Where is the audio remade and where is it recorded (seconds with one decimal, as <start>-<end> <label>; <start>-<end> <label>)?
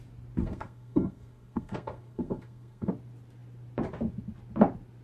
0.0-0.4 recorded; 0.4-2.9 remade; 2.9-5.0 recorded